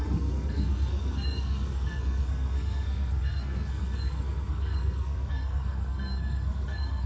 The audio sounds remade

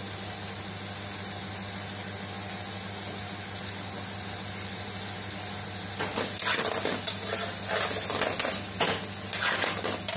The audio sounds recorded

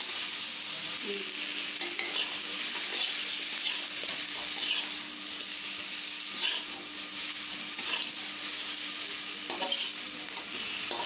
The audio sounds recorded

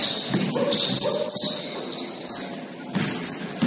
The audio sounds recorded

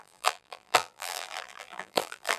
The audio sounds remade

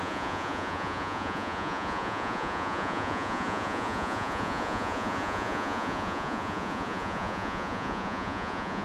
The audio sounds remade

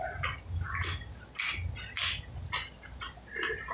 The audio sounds recorded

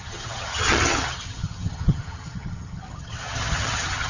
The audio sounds remade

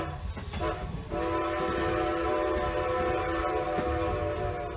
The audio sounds recorded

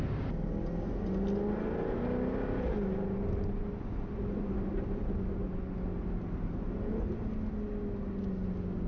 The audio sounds recorded